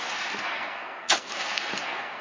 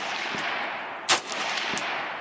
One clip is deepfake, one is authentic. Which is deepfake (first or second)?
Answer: first